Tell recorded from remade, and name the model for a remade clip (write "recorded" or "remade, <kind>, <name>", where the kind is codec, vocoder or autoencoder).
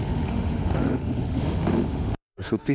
remade, autoencoder, DAC-VAE